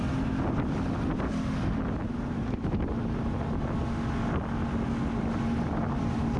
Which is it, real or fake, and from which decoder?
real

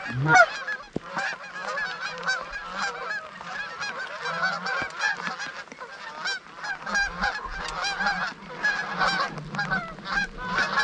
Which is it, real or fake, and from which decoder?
real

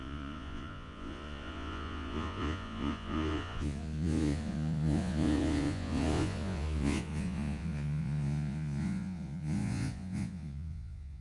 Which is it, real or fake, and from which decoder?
fake, vocoder, Vocos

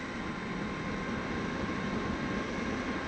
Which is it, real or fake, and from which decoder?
real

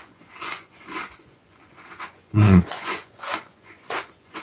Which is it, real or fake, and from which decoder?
fake, vocoder, Vocos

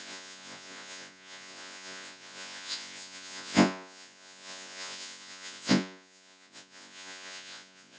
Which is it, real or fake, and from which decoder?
fake, vocoder, Vocos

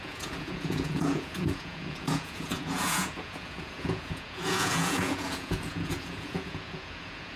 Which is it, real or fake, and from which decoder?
fake, vocoder, Vocos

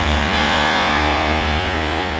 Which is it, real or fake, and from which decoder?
fake, vocoder, Vocos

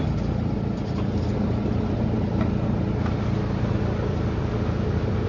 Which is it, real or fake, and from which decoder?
real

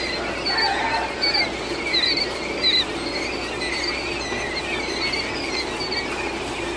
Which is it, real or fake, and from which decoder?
real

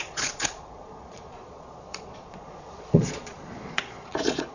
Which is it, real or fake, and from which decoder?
fake, vocoder, Vocos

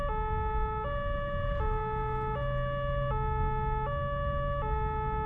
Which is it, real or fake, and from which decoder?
real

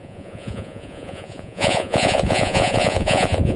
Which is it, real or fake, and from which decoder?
fake, vocoder, Vocos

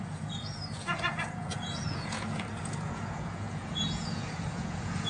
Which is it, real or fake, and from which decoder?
fake, vocoder, Vocos